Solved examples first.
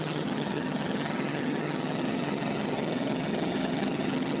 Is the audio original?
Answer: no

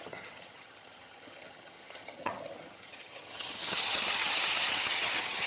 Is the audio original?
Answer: no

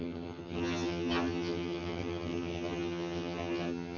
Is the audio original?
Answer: no